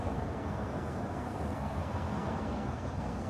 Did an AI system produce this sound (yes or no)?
yes